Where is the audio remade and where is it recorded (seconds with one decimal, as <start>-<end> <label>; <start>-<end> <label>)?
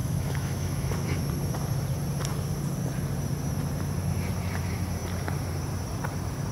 0.0-1.2 remade; 1.2-6.5 recorded